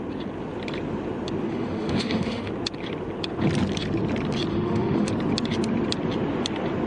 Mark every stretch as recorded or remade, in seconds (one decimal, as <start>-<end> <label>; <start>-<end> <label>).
0.0-1.5 recorded; 1.5-2.5 remade; 2.5-4.5 recorded; 4.5-5.1 remade; 5.1-6.9 recorded